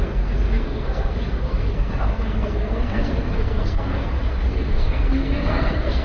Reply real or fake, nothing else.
fake